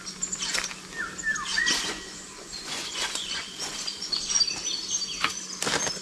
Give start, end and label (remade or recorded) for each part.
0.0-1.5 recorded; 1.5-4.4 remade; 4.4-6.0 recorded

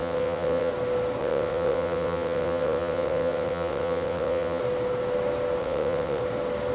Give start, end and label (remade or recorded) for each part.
0.0-0.7 remade; 0.7-1.2 recorded; 1.2-4.6 remade; 4.6-5.6 recorded; 5.6-6.2 remade; 6.2-6.7 recorded

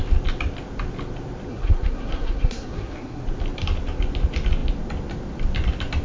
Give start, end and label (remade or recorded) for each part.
0.0-1.5 recorded; 1.5-3.2 remade; 3.2-6.0 recorded

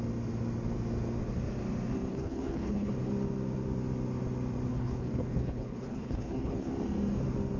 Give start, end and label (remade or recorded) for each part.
0.0-2.1 recorded; 2.1-2.9 remade; 2.9-4.7 recorded; 4.7-6.7 remade; 6.7-7.6 recorded

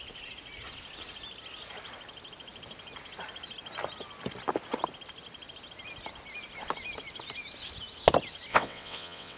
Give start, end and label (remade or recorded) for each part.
0.0-8.5 recorded; 8.5-9.4 remade

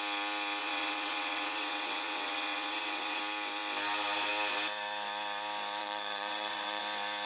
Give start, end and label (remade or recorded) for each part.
0.0-0.6 recorded; 0.6-3.2 remade; 3.2-5.8 recorded; 5.8-6.8 remade; 6.8-7.3 recorded

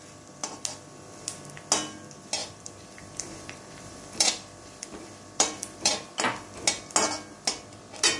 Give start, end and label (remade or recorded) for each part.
0.0-2.4 recorded; 2.4-5.9 remade; 5.9-8.2 recorded